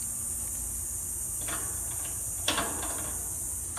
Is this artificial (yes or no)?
no